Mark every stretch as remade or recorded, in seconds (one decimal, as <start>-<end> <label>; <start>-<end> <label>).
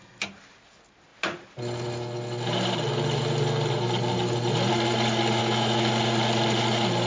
0.0-5.4 recorded; 5.4-5.9 remade; 5.9-7.1 recorded